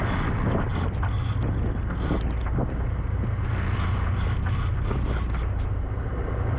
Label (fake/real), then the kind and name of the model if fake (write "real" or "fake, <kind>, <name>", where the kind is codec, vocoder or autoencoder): real